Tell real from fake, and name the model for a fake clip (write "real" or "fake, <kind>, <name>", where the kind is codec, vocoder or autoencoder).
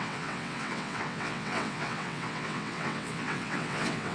fake, vocoder, WaveNeXt